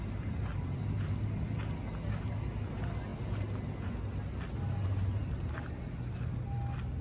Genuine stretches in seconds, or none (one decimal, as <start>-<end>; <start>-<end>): 0.0-7.0